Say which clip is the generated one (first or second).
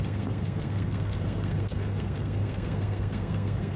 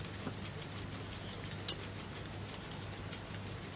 first